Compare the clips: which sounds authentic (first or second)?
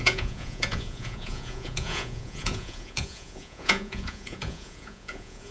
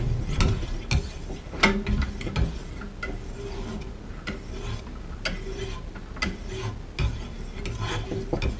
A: second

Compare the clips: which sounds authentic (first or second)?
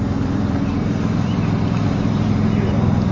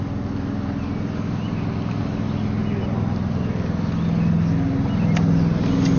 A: second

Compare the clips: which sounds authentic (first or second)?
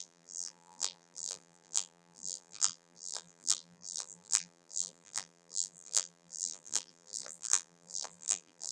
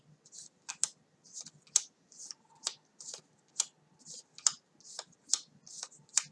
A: second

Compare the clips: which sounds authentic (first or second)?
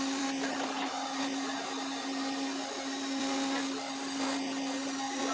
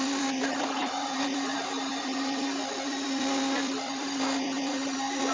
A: first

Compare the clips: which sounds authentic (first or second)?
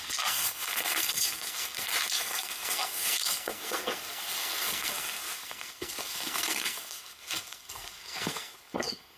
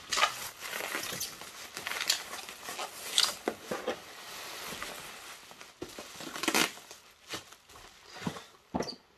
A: second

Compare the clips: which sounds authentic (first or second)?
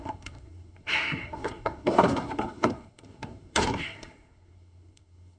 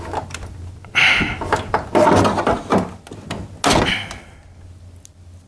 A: second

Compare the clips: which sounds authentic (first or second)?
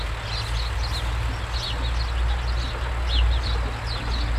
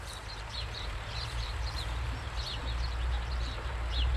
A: first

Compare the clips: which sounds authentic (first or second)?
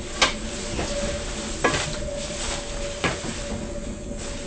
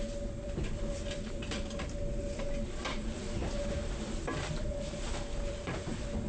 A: first